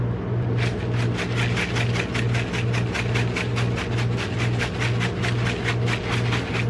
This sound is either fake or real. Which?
real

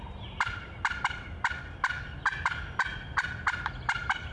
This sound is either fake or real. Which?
real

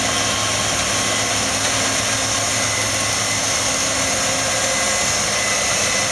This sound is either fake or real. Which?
real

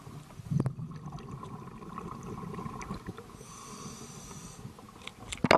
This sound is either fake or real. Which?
real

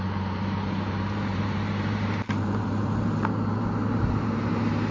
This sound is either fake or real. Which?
fake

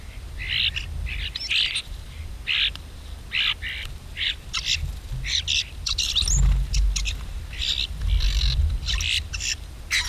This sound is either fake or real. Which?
real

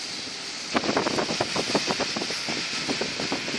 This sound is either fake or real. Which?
real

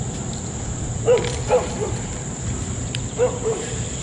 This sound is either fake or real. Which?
fake